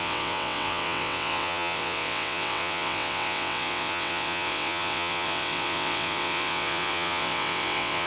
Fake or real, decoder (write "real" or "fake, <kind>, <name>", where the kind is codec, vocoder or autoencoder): fake, vocoder, WaveNeXt